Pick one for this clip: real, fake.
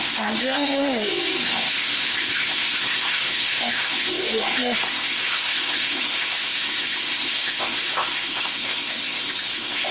fake